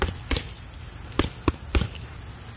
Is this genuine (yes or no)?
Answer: yes